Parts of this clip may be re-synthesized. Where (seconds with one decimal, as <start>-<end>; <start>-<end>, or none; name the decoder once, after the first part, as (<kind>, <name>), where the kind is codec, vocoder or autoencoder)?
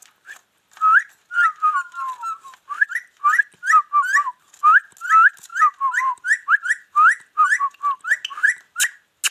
5.5-7.8 (vocoder, BigVGAN v2)